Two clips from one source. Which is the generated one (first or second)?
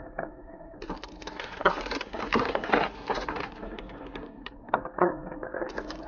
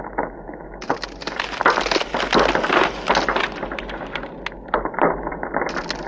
first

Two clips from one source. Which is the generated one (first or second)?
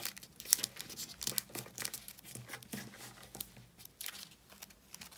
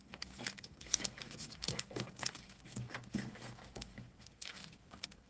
second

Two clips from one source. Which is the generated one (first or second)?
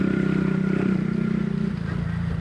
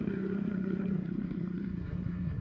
second